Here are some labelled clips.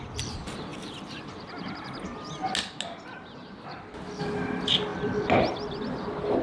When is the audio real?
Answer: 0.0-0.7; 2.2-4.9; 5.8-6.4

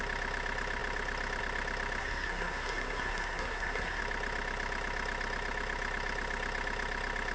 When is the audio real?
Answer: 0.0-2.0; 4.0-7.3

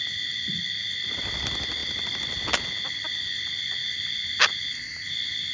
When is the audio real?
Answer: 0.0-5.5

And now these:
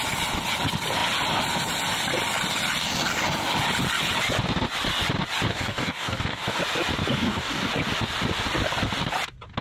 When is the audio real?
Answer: 0.0-5.5; 6.6-7.1; 7.7-9.6

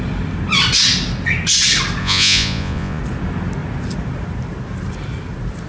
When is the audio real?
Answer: 0.0-2.0; 3.0-5.7

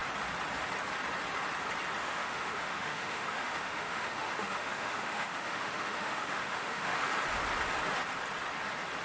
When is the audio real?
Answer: 0.0-2.0; 7.1-9.0

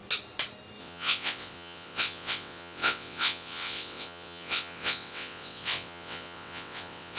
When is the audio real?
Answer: 0.0-0.8

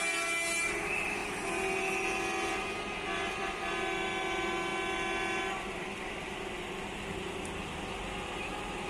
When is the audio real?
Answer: 0.0-8.9